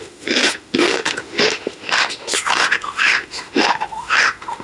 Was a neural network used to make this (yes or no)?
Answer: yes